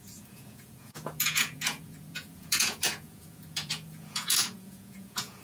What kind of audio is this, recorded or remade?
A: remade